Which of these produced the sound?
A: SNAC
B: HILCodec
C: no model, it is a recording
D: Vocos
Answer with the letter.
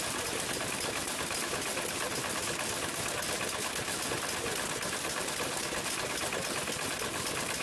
C